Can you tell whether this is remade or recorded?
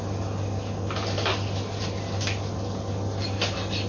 recorded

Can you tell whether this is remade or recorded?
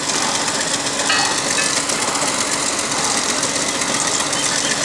recorded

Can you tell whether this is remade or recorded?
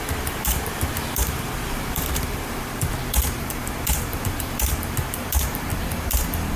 remade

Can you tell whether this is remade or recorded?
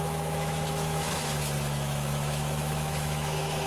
remade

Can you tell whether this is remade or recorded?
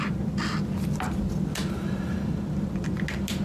recorded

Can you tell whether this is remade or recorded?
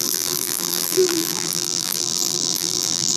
remade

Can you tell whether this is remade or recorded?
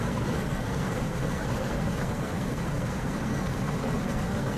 remade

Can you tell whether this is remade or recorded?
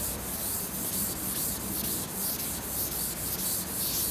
remade